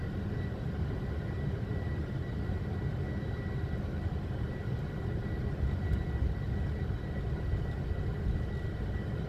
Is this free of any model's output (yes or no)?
yes